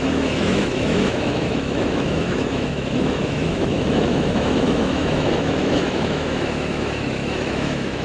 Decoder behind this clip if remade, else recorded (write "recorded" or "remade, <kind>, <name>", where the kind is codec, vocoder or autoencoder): remade, autoencoder, DAC-VAE